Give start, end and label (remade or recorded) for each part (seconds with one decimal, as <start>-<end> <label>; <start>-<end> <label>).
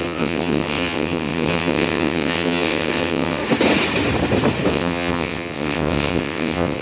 0.0-3.4 remade; 3.4-4.7 recorded; 4.7-6.8 remade